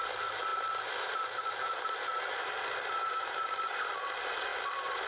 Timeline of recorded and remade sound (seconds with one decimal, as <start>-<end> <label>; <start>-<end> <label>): 0.0-5.1 recorded